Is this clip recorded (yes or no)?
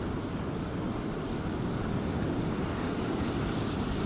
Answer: yes